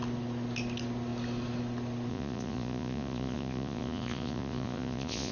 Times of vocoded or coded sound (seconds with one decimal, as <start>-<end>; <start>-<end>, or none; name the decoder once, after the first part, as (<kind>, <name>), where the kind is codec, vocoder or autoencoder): 2.1-5.3 (vocoder, Vocos)